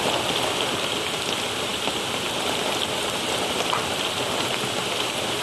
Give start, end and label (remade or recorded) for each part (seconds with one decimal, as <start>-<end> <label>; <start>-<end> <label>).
0.0-5.4 recorded

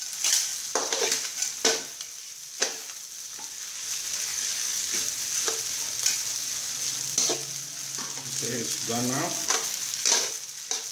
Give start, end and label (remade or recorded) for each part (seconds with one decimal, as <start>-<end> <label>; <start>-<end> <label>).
0.0-4.3 recorded; 4.3-4.9 remade; 4.9-9.4 recorded; 9.4-10.0 remade; 10.0-10.9 recorded

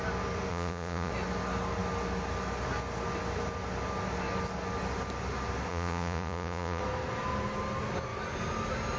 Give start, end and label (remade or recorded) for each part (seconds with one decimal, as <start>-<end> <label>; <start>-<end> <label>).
0.0-0.5 recorded; 0.5-1.1 remade; 1.1-5.7 recorded; 5.7-6.8 remade; 6.8-9.0 recorded

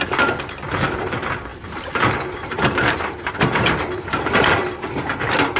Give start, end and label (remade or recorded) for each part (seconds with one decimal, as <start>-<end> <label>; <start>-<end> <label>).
0.0-4.6 remade; 4.6-5.6 recorded

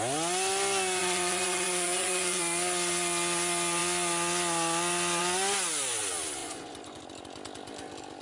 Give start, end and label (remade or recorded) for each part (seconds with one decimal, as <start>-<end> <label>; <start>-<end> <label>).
0.0-1.0 recorded; 1.0-2.4 remade; 2.4-6.4 recorded; 6.4-7.0 remade; 7.0-8.2 recorded

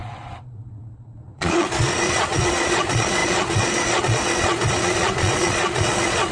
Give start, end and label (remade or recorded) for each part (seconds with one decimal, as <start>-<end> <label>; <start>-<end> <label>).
0.0-6.3 remade

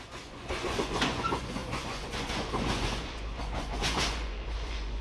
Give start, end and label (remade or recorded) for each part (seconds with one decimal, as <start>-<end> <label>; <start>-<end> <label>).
0.0-5.0 remade